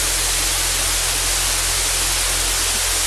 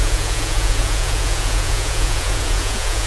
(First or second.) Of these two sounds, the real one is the first